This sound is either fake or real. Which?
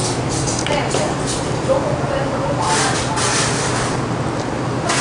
real